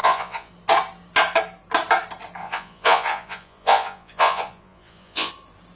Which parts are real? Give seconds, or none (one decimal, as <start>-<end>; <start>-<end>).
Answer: 0.5-2.4; 5.3-5.8